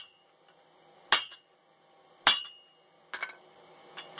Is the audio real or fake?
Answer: real